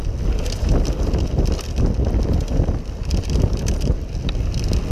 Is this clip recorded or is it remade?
recorded